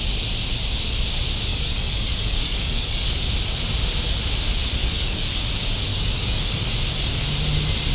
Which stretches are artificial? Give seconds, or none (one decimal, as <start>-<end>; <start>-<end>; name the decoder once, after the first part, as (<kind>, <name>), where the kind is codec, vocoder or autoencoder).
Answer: 1.5-3.3 (codec, DAC); 4.8-5.4; 5.9-6.7